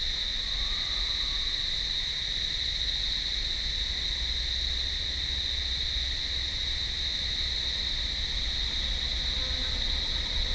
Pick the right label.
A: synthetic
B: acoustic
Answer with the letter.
B